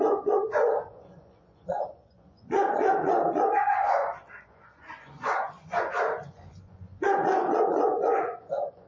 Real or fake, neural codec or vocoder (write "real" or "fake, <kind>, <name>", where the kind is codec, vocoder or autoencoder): fake, vocoder, Vocos